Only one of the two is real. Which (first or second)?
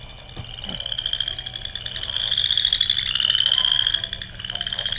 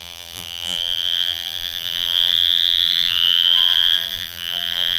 first